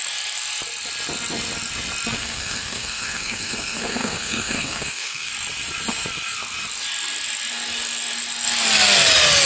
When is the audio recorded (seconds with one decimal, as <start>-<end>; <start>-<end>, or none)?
0.0-2.2; 5.3-9.5